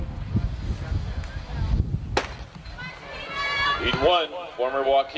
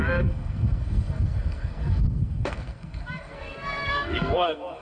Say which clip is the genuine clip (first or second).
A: first